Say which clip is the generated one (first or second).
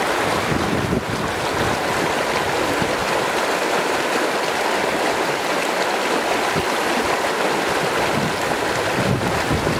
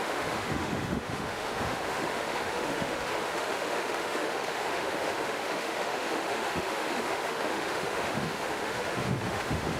second